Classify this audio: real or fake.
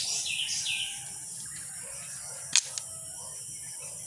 real